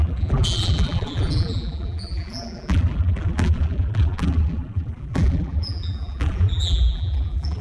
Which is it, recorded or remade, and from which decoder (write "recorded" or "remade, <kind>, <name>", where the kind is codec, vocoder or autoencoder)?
remade, vocoder, BigVGAN v2